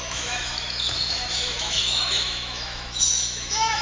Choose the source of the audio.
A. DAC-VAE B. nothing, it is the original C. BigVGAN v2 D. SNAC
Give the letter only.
A